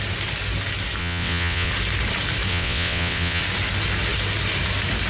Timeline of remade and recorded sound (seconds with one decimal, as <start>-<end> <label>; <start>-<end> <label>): 0.0-1.0 recorded; 1.0-1.7 remade; 1.7-2.5 recorded; 2.5-3.4 remade; 3.4-5.1 recorded